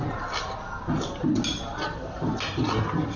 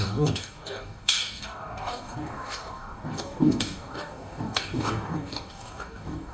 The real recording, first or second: first